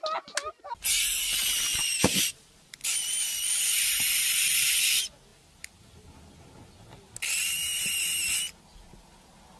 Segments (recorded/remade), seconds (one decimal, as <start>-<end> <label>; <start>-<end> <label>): 0.0-1.7 recorded; 1.7-4.0 remade; 4.0-9.6 recorded